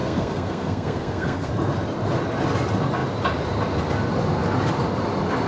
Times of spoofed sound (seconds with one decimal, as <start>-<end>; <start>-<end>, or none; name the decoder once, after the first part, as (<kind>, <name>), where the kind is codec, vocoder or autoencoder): 0.0-1.5 (codec, SNAC)